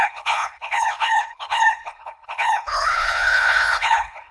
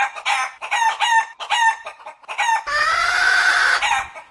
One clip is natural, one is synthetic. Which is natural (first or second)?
second